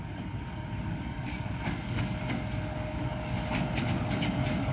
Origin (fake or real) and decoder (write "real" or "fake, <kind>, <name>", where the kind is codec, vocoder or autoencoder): fake, codec, DAC